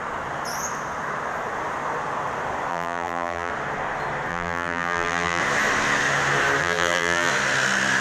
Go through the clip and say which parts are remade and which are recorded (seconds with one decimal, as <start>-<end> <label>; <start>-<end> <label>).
0.0-2.7 recorded; 2.7-3.5 remade; 3.5-4.3 recorded; 4.3-5.4 remade; 5.4-6.6 recorded; 6.6-7.3 remade; 7.3-8.0 recorded